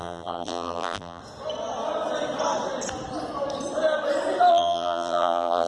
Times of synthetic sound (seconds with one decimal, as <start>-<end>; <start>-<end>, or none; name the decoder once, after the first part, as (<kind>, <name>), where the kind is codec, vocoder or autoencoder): 0.0-1.2 (vocoder, BigVGAN v2); 4.5-5.7